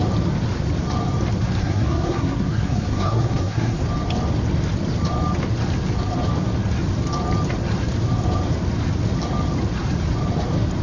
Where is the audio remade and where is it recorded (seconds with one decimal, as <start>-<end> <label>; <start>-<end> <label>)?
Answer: 0.0-1.6 recorded; 1.6-3.8 remade; 3.8-10.8 recorded